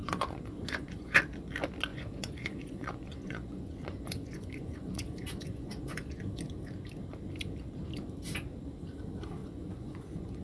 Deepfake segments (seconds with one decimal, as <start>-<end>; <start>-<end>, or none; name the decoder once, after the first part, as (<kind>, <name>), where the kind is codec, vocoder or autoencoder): 0.0-1.2 (vocoder, Vocos); 1.9-6.4; 9.4-10.4